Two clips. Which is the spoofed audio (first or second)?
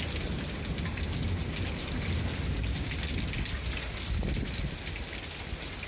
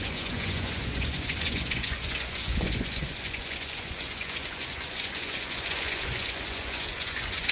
second